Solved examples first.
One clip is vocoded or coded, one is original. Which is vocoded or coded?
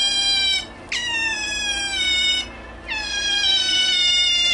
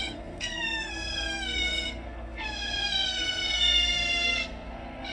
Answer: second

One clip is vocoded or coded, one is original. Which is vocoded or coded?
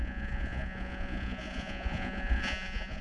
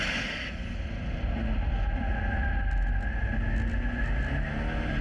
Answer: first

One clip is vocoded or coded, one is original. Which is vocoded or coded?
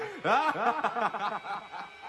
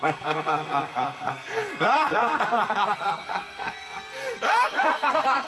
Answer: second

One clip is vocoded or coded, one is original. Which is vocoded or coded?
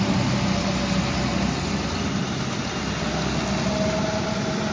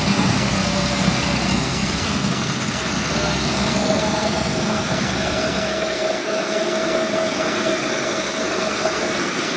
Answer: second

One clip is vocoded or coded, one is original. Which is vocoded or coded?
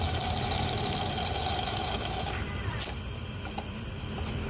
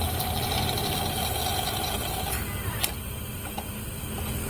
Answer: first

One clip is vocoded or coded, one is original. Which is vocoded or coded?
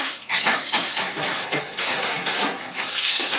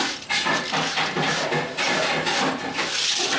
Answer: first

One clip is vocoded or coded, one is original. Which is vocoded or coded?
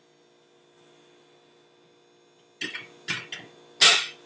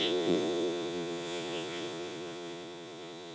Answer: second